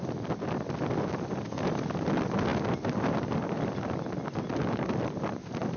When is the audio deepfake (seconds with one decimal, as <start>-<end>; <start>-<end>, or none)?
none